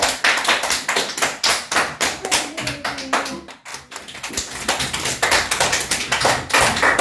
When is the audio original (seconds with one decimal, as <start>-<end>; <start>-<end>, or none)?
0.0-7.0